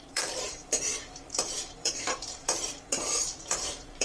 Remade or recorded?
remade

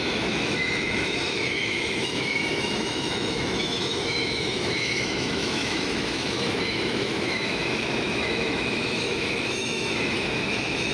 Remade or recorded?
remade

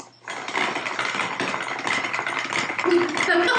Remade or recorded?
recorded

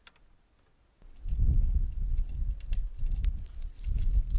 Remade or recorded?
recorded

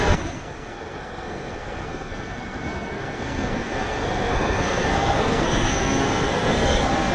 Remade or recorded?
remade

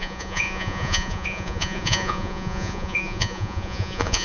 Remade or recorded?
remade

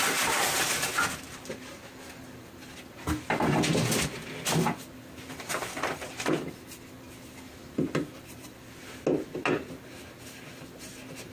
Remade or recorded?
recorded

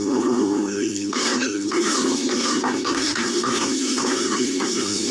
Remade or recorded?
remade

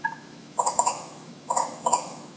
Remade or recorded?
remade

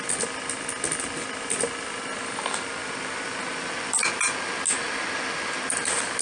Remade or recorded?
recorded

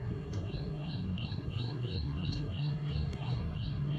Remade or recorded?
remade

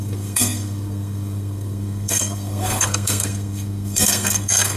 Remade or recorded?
remade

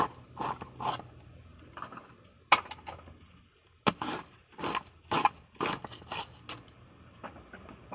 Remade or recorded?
recorded